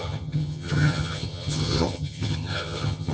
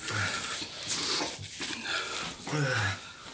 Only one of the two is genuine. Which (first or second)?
second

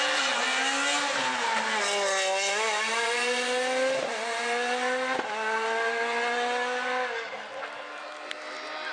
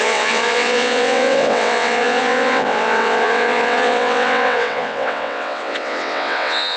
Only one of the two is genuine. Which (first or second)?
first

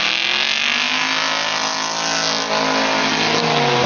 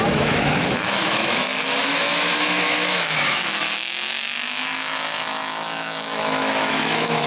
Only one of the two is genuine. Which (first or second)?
first